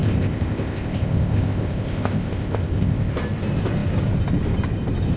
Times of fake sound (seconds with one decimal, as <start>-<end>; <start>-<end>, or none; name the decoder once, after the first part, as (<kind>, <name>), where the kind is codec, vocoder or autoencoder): 0.0-3.1 (codec, ZipCodec)

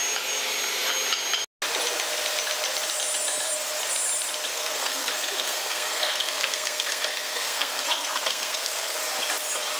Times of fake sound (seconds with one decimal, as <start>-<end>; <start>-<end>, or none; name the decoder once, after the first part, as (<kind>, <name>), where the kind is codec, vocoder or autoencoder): 4.5-9.0 (codec, SNAC)

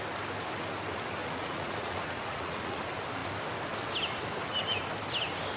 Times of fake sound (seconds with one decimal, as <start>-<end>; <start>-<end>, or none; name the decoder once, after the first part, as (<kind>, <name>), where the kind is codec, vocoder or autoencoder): 1.2-2.8 (vocoder, Vocos)

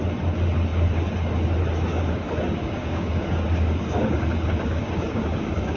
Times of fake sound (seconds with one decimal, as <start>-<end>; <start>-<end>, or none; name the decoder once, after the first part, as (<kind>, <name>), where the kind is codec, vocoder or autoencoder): 1.9-5.8 (codec, DAC)

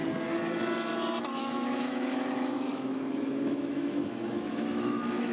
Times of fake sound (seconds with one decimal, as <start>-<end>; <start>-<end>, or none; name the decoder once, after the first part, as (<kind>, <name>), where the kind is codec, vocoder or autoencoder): 1.4-5.3 (autoencoder, DAC-VAE)

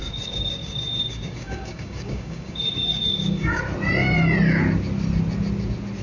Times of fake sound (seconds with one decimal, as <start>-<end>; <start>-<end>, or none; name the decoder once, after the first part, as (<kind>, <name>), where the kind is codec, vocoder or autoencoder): 0.0-3.6 (codec, DAC)